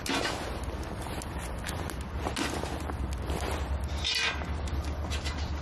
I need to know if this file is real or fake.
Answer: real